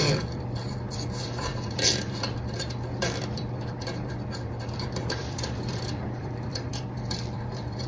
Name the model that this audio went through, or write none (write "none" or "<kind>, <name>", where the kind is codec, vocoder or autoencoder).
vocoder, BigVGAN v2